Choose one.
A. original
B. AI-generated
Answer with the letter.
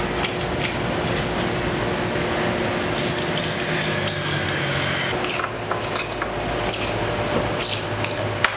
A